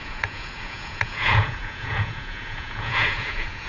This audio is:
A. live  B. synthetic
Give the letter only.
B